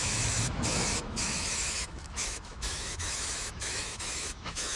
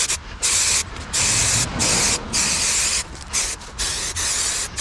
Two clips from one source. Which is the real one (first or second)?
second